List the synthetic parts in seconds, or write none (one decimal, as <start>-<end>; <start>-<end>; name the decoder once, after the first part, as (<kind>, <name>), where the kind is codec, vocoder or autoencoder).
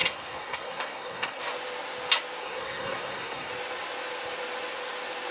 0.0-1.4 (codec, SNAC); 2.4-3.5